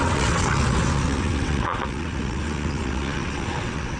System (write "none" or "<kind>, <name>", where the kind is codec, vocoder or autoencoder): vocoder, WaveNeXt